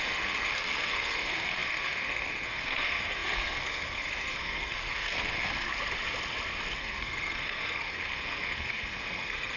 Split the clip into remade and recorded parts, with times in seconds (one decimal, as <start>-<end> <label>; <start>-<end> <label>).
0.0-5.7 remade; 5.7-6.8 recorded; 6.8-9.6 remade